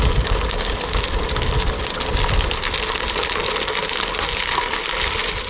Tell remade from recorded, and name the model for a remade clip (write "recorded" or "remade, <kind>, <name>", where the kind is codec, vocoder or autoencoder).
recorded